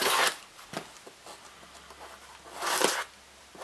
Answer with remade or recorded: recorded